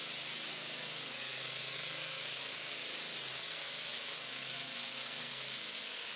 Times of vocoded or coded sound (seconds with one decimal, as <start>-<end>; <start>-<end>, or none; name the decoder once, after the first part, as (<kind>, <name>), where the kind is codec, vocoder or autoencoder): 0.5-2.8 (codec, SNAC); 3.3-6.2